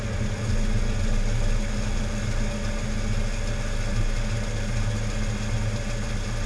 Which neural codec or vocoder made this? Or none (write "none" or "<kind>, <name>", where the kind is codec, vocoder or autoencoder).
none